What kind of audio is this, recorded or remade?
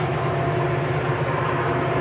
recorded